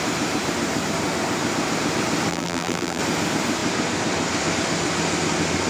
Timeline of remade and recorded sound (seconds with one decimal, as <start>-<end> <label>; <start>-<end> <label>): 0.0-2.3 recorded; 2.3-3.0 remade; 3.0-5.7 recorded